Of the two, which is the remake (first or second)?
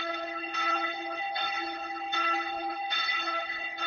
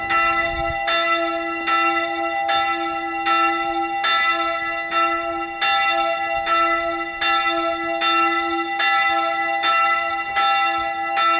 first